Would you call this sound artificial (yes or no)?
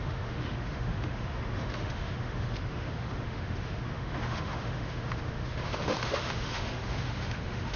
yes